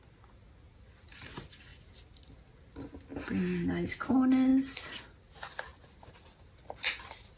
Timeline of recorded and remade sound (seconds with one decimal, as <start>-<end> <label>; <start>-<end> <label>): 0.0-7.4 recorded